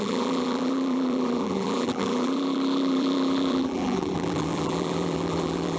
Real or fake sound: fake